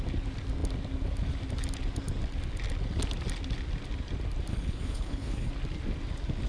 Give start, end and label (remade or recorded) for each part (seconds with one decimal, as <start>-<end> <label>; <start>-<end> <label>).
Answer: 0.0-4.5 recorded; 4.5-5.5 remade; 5.5-6.5 recorded